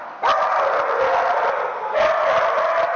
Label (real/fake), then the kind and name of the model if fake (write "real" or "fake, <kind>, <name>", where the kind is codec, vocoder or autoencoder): real